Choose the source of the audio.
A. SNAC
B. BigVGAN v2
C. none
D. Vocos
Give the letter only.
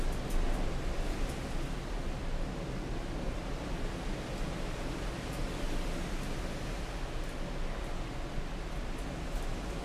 C